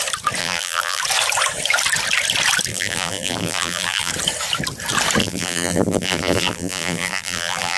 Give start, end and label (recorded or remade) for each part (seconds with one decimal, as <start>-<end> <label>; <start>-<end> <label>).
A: 0.0-0.4 recorded; 0.4-1.0 remade; 1.0-2.7 recorded; 2.7-4.1 remade; 4.1-5.2 recorded; 5.2-7.8 remade